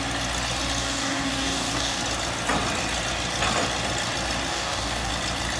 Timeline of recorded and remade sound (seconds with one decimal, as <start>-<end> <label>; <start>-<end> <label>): 0.0-0.8 recorded; 0.8-2.0 remade; 2.0-4.5 recorded; 4.5-5.1 remade; 5.1-5.6 recorded